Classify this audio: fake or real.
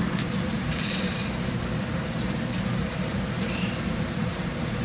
fake